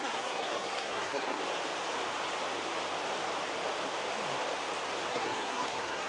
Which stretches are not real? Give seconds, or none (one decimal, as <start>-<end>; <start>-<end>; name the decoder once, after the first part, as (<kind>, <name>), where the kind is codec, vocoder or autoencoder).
0.0-1.4 (codec, SNAC); 5.1-6.1